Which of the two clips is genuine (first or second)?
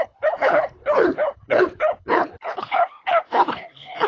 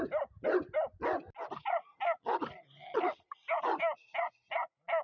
second